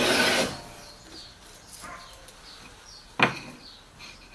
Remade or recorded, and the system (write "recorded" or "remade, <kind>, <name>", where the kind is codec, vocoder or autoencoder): recorded